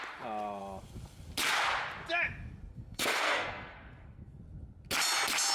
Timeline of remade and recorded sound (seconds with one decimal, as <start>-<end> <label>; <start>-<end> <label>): 0.0-2.7 recorded; 2.7-4.4 remade; 4.4-5.5 recorded